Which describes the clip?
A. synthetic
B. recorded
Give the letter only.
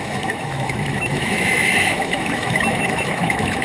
A